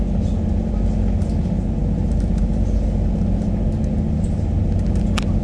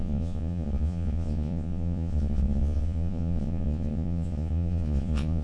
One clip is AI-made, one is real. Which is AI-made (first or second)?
second